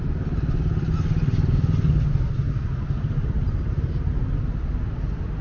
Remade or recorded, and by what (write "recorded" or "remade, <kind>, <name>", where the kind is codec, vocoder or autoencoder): recorded